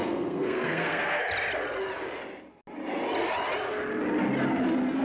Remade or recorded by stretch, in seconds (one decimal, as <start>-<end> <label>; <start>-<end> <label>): 0.0-1.2 remade; 1.2-5.0 recorded